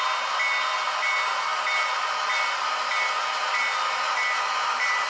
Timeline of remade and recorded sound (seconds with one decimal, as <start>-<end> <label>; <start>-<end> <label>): 0.0-5.1 recorded